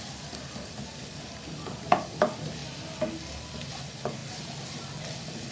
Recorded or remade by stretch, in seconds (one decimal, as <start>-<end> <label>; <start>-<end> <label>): 0.0-5.5 recorded